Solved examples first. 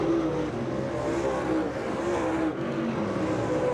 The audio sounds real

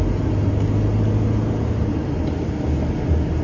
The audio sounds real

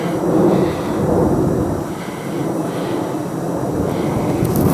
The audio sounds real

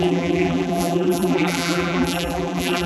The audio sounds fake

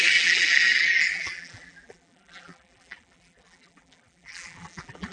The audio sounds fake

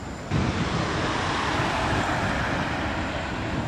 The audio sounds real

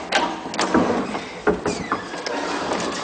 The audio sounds real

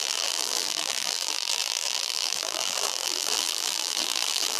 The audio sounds fake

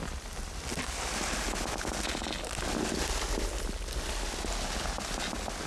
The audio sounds real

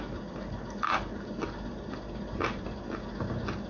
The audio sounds real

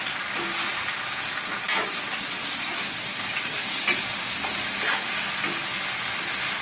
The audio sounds real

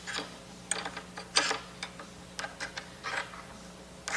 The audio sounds real